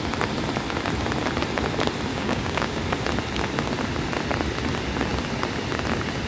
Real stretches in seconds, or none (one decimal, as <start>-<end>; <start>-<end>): 0.0-2.1; 2.8-6.3